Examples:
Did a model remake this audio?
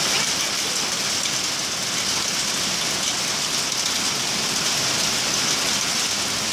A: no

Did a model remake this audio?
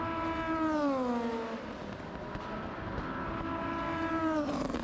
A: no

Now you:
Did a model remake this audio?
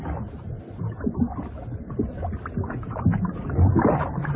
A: no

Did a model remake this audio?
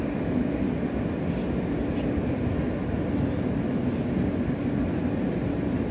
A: no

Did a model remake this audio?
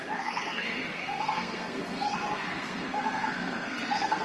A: yes